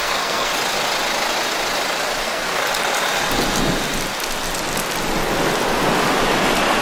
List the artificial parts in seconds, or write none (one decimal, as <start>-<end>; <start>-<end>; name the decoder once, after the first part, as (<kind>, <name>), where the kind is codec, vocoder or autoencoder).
0.0-0.5 (codec, SNAC); 2.2-2.6